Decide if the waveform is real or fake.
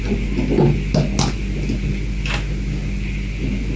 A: real